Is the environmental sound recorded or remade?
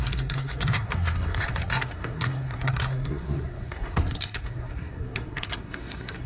remade